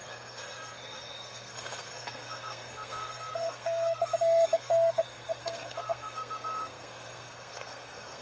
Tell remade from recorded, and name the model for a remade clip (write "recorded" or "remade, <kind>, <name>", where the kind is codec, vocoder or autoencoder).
remade, codec, SNAC